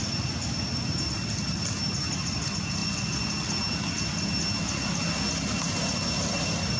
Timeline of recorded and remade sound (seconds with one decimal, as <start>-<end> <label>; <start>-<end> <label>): 0.0-2.8 recorded; 2.8-3.3 remade; 3.3-6.8 recorded